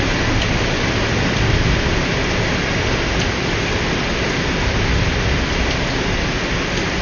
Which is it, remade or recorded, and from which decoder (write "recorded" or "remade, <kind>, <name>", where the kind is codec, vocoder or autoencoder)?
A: recorded